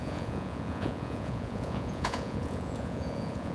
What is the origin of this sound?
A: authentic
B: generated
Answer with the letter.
B